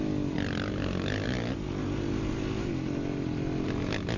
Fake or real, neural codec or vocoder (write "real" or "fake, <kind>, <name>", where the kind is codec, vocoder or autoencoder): real